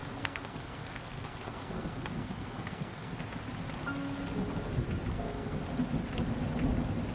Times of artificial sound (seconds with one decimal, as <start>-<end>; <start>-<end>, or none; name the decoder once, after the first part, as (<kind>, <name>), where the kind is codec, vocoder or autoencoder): 0.0-3.2 (codec, SNAC); 5.1-5.6